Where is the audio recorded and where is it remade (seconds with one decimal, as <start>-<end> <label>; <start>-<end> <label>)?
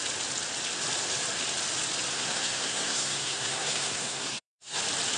0.0-2.1 recorded; 2.1-4.8 remade; 4.8-5.2 recorded